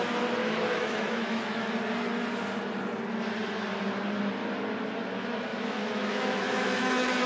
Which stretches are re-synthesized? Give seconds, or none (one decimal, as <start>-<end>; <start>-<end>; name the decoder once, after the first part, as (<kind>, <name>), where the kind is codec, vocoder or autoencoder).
0.4-1.7 (autoencoder, DAC-VAE); 5.5-7.3